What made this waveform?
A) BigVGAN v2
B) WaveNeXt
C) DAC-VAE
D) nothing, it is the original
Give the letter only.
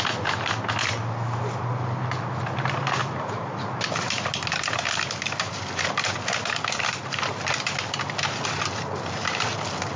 D